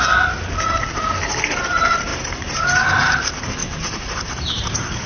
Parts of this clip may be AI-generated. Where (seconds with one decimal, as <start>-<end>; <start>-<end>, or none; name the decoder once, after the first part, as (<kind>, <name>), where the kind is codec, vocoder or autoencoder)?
2.1-2.8 (vocoder, BigVGAN v2); 3.6-5.1